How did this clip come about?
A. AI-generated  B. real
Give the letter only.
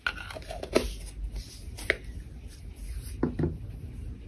B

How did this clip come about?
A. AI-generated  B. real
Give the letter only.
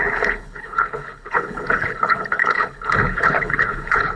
A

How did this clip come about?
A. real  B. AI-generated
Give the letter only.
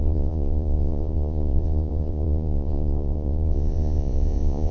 B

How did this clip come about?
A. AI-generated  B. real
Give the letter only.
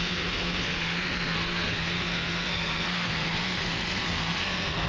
A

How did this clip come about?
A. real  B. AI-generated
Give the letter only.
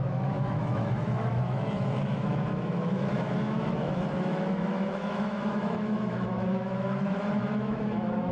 B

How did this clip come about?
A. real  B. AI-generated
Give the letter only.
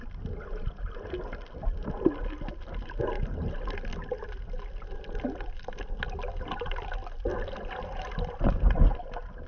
A